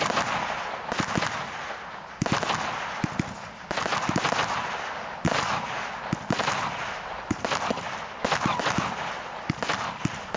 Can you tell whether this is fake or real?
real